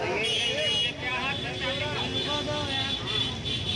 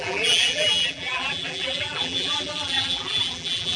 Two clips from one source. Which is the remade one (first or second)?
second